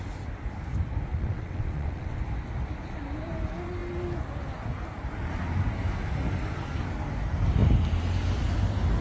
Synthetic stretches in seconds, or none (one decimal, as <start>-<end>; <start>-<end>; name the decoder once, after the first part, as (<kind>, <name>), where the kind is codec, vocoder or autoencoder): 1.1-2.2 (vocoder, WaveNeXt)